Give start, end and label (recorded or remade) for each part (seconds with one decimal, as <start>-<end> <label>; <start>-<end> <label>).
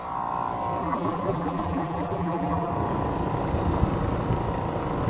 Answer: 0.0-0.8 recorded; 0.8-2.7 remade; 2.7-5.1 recorded